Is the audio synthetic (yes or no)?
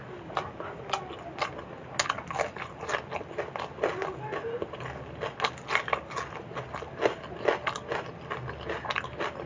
no